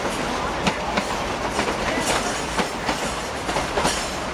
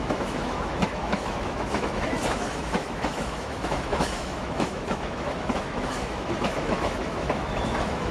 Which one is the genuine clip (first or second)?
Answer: first